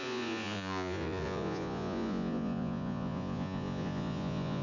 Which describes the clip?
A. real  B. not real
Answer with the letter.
B